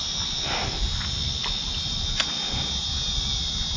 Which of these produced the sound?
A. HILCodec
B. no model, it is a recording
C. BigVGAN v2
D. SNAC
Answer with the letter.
B